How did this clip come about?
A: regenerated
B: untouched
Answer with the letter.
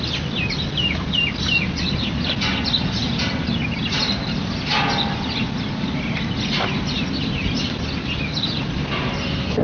B